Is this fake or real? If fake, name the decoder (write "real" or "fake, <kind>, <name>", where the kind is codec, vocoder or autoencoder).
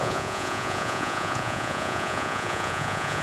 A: fake, vocoder, Vocos